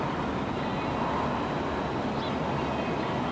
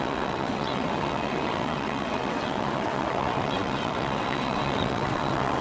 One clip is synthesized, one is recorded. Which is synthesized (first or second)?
second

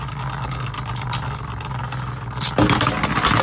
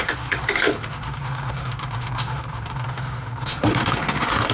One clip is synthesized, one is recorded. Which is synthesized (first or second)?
second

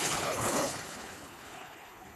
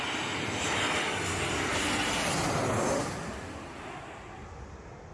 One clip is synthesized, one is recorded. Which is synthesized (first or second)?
first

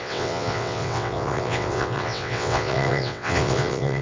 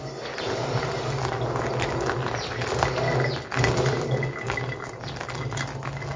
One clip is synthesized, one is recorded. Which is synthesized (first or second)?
first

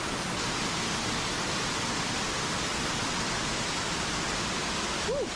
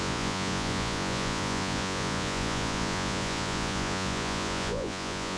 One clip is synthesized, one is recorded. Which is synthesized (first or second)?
second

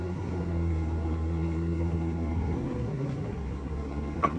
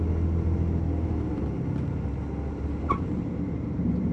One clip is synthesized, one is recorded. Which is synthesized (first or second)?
first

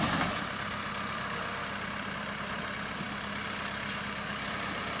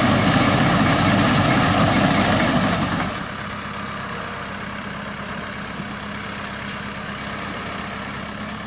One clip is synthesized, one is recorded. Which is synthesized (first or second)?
first